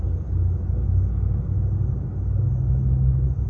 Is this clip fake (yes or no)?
no